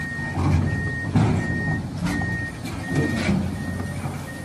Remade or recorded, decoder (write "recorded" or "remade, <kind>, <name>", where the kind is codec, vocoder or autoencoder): recorded